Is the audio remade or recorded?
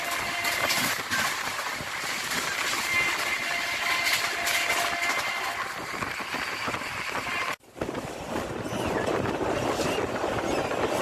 recorded